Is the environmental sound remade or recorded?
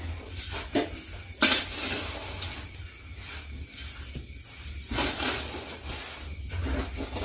recorded